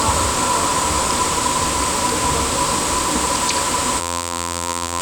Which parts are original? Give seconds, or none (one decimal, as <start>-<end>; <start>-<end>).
0.0-4.0